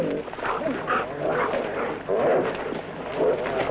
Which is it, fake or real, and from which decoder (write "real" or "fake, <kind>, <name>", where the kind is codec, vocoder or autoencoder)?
real